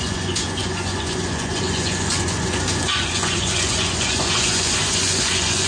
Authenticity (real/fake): fake